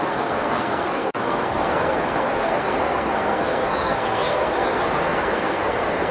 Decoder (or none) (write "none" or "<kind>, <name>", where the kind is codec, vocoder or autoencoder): codec, SNAC